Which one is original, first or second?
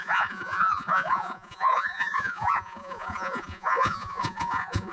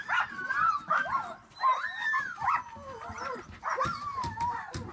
second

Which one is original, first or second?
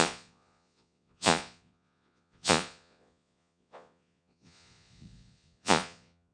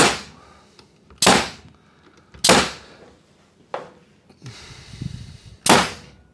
second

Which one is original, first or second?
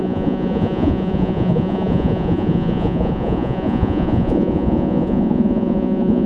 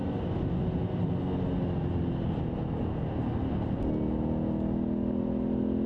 second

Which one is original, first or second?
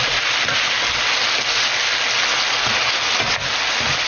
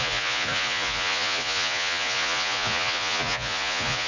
first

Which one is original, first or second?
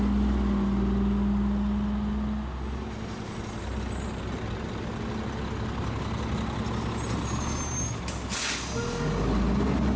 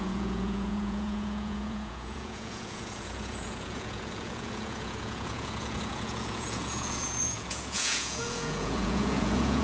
first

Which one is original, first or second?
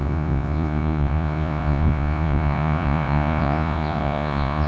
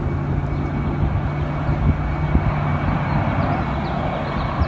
second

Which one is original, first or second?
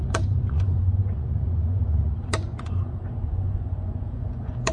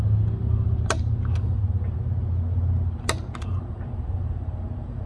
second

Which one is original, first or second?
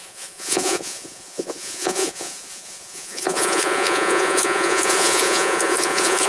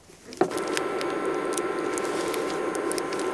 second